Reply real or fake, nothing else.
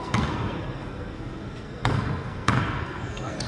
fake